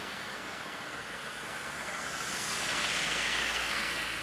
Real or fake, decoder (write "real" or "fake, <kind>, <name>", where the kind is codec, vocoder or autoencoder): fake, codec, SNAC